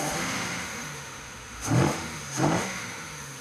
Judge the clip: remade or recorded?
remade